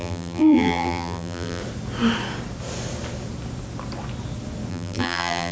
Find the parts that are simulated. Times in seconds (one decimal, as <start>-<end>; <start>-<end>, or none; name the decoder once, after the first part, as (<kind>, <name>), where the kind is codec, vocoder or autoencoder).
0.0-1.6 (vocoder, BigVGAN v2); 4.7-5.5